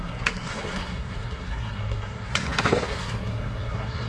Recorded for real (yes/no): no